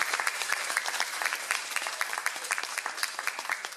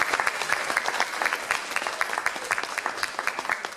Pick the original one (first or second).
second